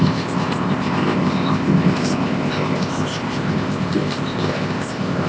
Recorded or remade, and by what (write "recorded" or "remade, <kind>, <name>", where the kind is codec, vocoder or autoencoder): remade, codec, ZipCodec